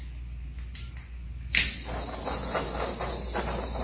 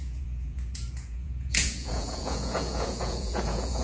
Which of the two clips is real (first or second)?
first